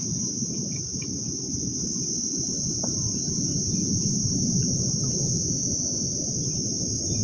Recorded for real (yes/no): no